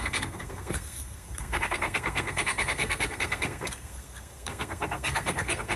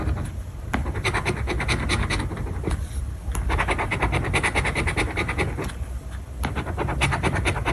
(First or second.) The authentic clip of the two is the second